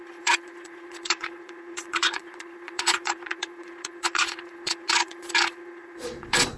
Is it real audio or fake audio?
fake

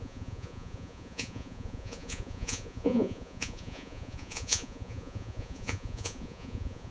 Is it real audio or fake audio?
fake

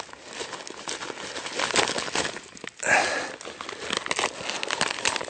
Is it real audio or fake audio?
real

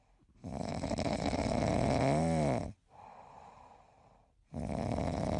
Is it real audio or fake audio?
real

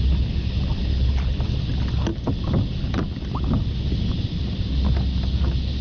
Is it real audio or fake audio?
real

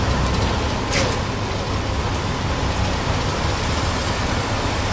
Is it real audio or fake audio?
real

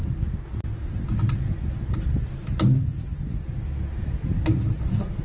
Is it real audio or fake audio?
real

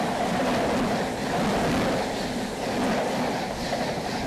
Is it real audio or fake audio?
real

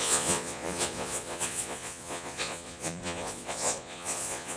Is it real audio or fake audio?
fake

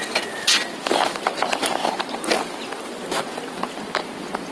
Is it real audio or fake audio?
real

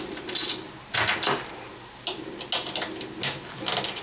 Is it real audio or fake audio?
real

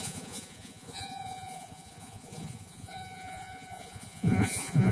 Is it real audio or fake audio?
fake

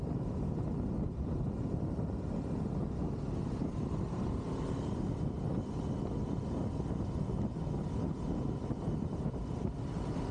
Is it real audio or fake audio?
real